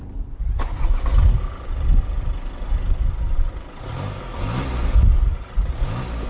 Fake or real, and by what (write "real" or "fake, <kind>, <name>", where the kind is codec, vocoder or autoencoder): real